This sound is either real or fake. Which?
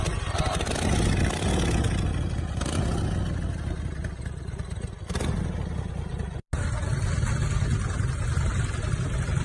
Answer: real